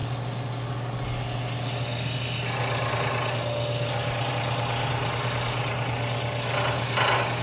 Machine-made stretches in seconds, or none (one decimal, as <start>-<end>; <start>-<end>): none

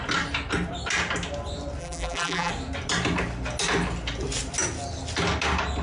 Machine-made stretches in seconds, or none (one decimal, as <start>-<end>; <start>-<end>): 1.8-2.5

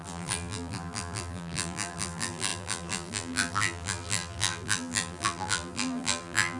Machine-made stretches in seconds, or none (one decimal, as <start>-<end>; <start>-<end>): 0.0-6.6

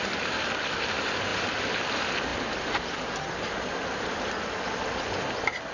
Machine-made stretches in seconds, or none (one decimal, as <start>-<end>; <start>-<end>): none